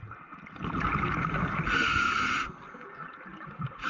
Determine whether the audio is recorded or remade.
recorded